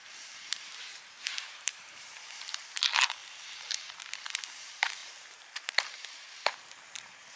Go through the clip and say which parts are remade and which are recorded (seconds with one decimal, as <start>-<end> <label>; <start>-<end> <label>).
0.0-7.4 remade